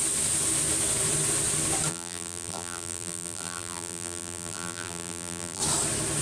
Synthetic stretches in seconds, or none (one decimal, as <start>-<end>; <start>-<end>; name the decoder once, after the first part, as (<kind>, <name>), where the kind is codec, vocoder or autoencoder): 1.9-5.6 (vocoder, BigVGAN v2)